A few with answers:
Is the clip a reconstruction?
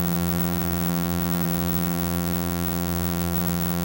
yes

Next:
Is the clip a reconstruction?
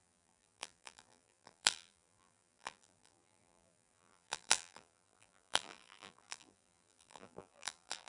yes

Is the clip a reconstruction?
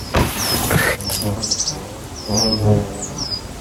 yes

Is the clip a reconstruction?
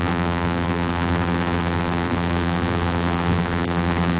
yes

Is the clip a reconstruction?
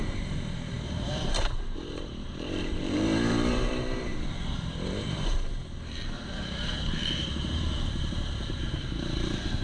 yes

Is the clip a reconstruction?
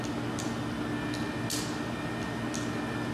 no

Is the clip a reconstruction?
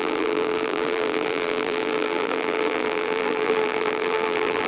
yes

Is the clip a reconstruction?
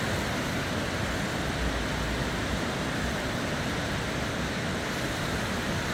no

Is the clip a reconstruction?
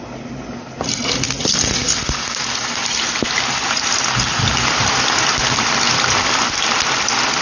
no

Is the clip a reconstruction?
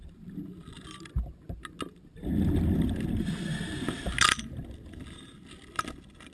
no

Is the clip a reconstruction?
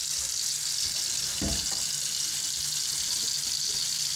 no